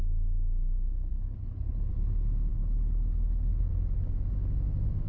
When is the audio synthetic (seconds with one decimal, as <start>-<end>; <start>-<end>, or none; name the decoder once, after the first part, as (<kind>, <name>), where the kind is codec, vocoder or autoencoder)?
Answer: 1.1-1.9 (codec, HILCodec); 2.5-3.7